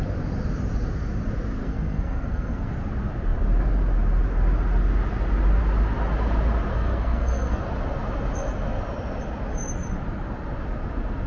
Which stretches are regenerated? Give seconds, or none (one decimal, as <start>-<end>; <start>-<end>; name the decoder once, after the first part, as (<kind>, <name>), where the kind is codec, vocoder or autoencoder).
1.6-2.7 (codec, SNAC); 6.7-7.6